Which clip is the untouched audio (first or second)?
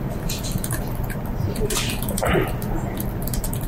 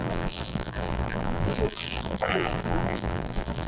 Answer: first